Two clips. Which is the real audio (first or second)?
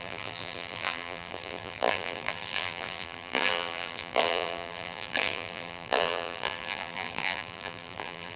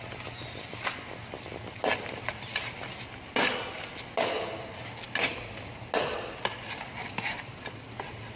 second